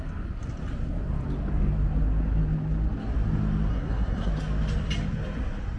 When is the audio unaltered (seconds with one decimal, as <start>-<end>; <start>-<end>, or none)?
0.0-3.7; 4.3-5.8